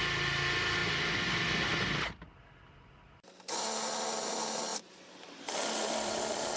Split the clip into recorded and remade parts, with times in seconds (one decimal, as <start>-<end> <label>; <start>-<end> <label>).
0.0-4.7 recorded; 4.7-6.6 remade